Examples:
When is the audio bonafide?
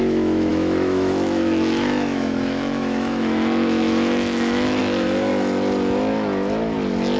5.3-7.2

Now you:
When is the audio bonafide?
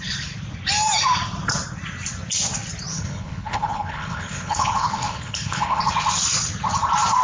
0.0-2.9; 5.8-7.2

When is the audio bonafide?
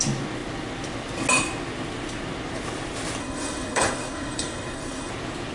0.0-3.2; 5.1-5.5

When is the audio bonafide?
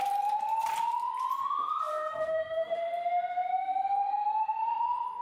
0.0-1.9; 2.8-5.2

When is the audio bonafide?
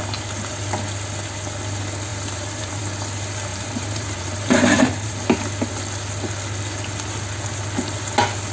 0.0-2.1; 2.8-3.5; 5.1-8.5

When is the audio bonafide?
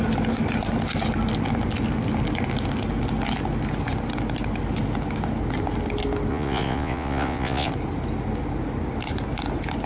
0.0-6.3; 7.7-9.9